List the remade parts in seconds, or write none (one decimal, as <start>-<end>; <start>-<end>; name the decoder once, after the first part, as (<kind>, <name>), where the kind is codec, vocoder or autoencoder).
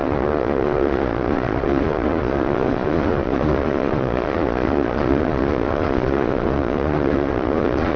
0.0-8.0 (vocoder, Vocos)